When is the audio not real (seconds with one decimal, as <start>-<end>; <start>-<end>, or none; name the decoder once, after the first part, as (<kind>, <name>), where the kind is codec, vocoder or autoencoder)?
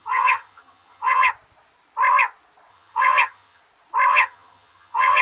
0.0-1.3 (vocoder, HiFi-GAN); 2.7-3.6; 4.1-5.2